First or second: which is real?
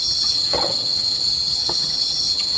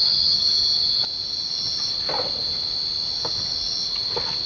second